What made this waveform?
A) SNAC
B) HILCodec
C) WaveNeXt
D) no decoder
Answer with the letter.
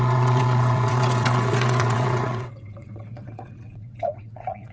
C